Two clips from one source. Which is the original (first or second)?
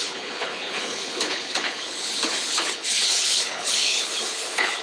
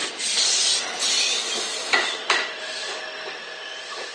second